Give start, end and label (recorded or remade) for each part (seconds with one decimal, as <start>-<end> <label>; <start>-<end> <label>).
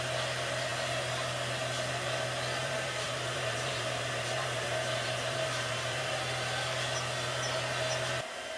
0.0-2.6 recorded; 2.6-6.1 remade; 6.1-8.6 recorded